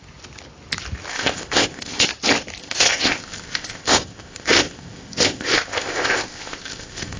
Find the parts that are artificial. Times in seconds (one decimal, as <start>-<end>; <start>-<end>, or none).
1.1-2.1; 2.6-7.2